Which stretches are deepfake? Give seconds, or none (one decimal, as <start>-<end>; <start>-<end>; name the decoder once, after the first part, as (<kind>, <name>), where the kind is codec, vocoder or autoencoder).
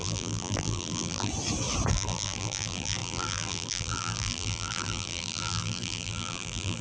0.0-1.3 (vocoder, BigVGAN v2); 1.9-6.8